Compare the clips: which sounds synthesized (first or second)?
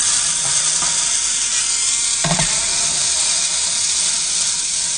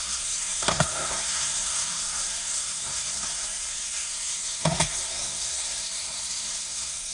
second